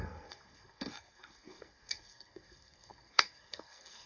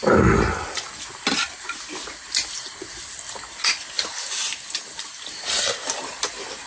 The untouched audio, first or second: second